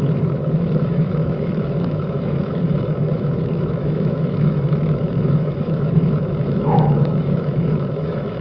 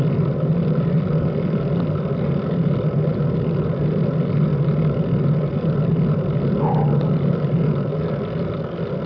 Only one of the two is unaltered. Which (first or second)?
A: second